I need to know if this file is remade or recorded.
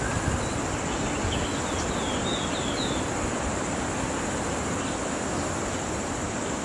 recorded